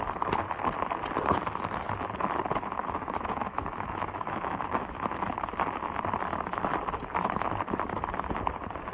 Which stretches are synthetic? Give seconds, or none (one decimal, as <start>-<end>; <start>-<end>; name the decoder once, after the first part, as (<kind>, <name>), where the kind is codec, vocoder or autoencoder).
2.8-5.3 (autoencoder, DAC-VAE)